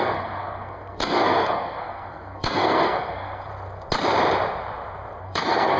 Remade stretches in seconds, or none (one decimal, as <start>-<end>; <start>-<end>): 0.0-3.5; 5.2-5.8